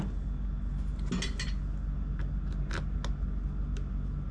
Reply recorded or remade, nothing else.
recorded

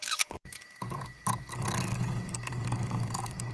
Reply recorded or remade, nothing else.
remade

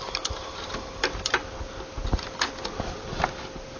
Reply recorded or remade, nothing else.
recorded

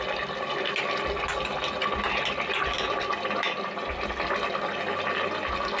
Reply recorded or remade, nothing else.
recorded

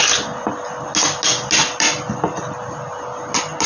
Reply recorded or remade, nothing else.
recorded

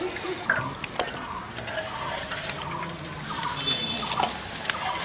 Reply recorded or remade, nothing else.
recorded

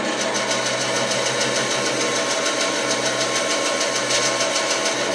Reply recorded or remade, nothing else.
recorded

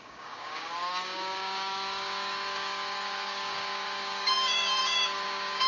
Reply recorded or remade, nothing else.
remade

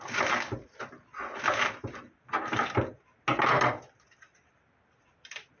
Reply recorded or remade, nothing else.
recorded